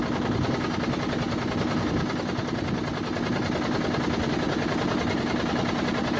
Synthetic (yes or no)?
no